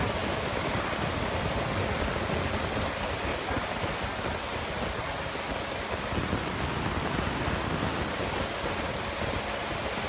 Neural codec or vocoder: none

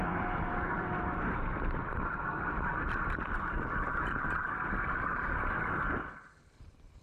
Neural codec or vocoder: vocoder, BigVGAN v2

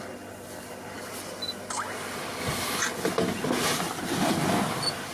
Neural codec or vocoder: none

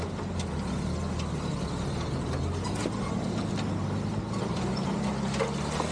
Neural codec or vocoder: none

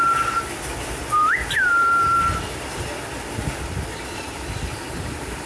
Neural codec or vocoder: none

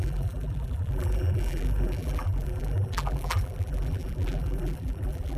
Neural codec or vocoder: vocoder, BigVGAN v2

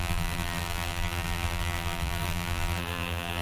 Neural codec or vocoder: vocoder, BigVGAN v2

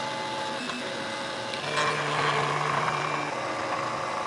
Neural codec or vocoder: none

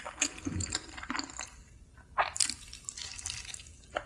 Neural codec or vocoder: none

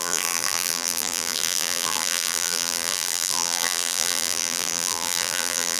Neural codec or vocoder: vocoder, BigVGAN v2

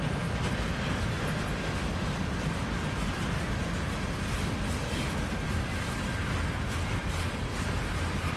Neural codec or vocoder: none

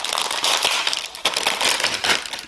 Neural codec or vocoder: vocoder, BigVGAN v2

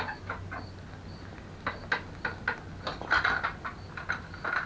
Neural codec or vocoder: none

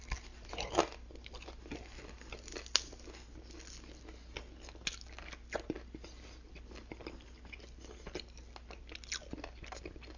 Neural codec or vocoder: none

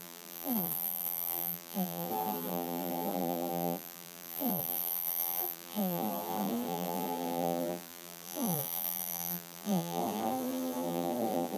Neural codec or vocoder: vocoder, BigVGAN v2